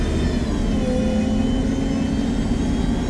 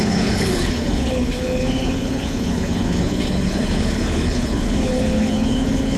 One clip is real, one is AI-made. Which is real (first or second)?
first